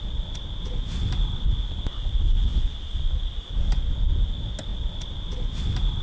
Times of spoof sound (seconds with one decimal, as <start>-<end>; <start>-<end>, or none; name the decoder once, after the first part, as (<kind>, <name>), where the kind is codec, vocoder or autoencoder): none